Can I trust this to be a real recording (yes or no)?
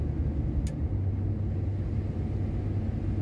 yes